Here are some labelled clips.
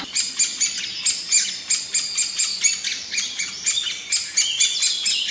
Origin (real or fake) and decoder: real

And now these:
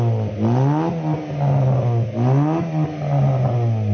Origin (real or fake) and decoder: real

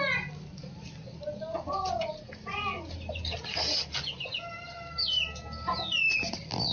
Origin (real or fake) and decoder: real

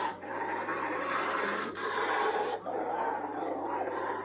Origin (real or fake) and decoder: fake, vocoder, BigVGAN v2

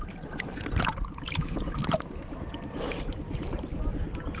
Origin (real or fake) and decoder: fake, vocoder, BigVGAN v2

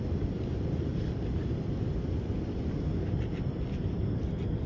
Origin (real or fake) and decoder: real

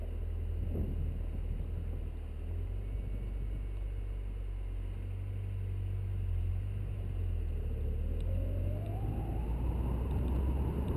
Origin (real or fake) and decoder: real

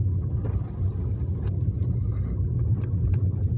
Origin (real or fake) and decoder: real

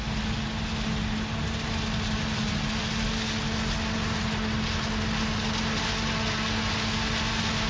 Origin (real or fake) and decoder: real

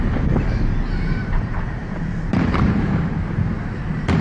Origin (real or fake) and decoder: fake, vocoder, BigVGAN v2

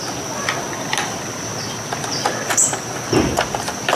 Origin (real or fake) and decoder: real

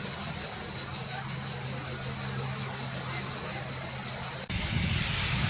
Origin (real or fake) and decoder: real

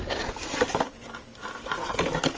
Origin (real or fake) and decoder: real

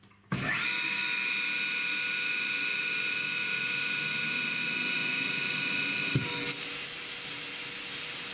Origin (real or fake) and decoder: real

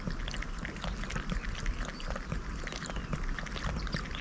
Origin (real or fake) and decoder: real